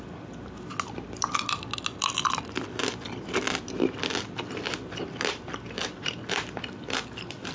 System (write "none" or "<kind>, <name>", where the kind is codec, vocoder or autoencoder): none